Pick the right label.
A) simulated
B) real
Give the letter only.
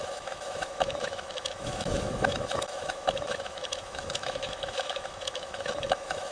A